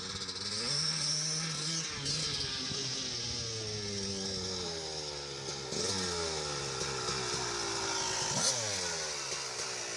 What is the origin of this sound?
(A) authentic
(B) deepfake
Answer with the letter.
A